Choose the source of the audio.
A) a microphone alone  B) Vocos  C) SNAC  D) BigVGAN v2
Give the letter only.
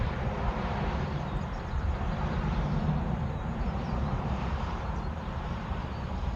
D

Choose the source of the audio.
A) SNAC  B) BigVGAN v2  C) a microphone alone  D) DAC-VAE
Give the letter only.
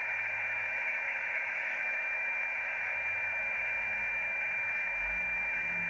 D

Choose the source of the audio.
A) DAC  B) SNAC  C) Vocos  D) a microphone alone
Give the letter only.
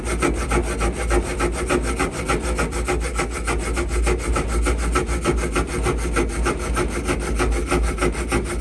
D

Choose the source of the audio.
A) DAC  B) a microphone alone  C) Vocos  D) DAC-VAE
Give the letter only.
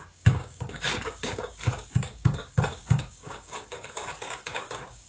A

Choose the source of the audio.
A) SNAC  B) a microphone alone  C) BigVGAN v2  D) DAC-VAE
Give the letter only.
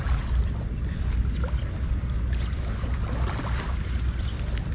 B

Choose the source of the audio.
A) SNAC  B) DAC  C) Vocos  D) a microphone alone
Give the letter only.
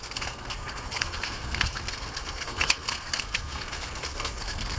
A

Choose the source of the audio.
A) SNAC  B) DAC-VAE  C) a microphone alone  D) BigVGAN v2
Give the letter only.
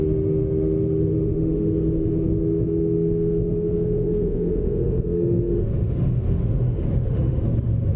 B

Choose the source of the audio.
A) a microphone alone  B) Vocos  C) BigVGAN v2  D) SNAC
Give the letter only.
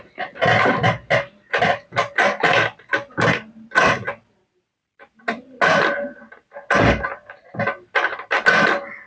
A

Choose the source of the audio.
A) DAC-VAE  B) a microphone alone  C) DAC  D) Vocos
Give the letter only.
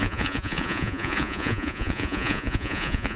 D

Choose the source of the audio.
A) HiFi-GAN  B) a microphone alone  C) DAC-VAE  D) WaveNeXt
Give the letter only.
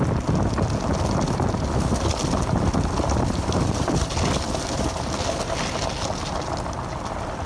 B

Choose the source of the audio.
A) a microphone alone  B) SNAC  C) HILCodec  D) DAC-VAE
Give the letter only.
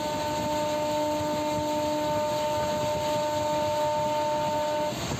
A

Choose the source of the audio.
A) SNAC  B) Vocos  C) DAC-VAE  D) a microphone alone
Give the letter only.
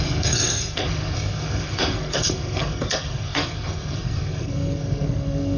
A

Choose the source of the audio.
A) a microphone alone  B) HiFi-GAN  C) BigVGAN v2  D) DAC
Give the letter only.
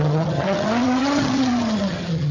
B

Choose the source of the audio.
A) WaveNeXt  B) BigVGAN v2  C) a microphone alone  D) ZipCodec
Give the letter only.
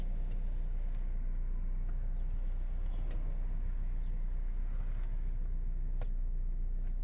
C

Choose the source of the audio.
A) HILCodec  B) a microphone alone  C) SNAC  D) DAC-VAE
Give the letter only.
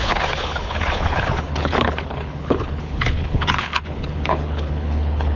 A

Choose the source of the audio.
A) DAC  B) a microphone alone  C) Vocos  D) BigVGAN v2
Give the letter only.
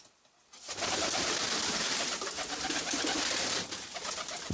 B